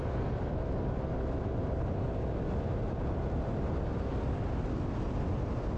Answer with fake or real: real